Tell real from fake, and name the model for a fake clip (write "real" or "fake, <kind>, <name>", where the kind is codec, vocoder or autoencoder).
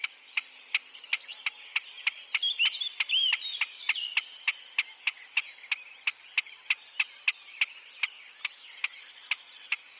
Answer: real